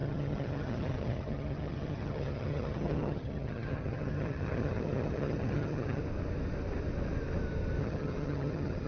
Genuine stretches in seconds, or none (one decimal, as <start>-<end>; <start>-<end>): 6.0-7.8